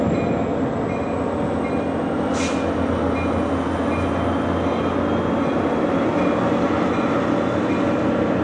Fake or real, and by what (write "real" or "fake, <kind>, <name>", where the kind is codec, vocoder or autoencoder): real